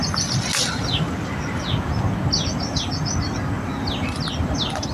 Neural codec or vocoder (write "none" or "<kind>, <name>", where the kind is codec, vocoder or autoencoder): none